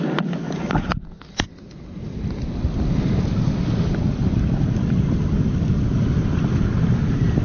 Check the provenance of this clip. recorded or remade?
recorded